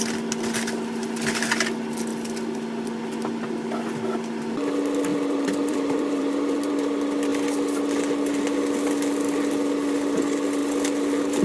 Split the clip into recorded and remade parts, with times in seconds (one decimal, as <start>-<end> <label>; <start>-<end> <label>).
0.0-5.1 recorded; 5.1-6.7 remade; 6.7-11.4 recorded